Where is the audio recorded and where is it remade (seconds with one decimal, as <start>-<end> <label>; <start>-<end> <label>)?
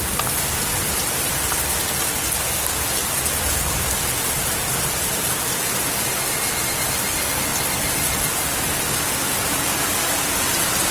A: 0.0-10.9 recorded